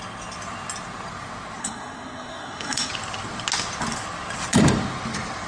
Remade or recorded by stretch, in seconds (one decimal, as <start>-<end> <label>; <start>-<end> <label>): 0.0-1.6 recorded; 1.6-2.9 remade; 2.9-5.5 recorded